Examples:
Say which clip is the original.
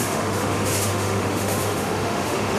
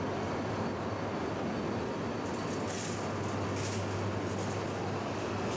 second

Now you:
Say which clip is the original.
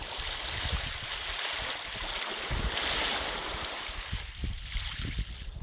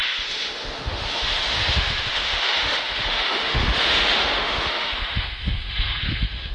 first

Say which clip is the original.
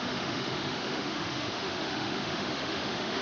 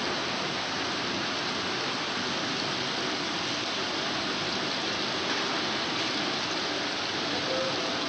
second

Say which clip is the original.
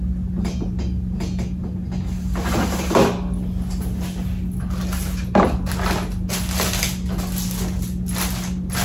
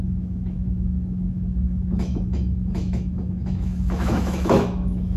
first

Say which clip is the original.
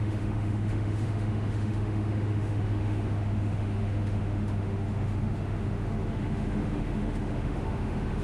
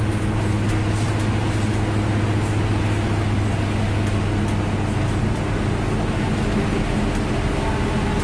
second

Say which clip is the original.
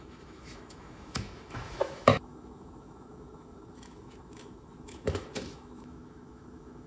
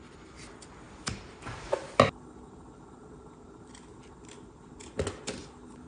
second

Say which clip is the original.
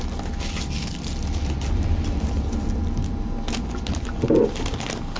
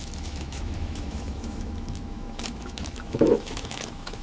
first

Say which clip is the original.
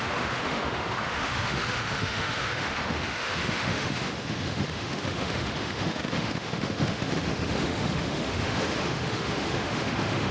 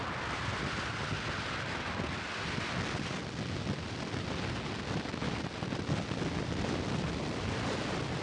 second